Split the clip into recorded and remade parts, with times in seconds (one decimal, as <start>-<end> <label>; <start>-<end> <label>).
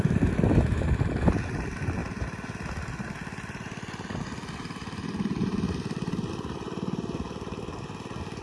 0.0-8.4 recorded